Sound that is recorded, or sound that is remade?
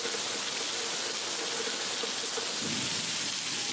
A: recorded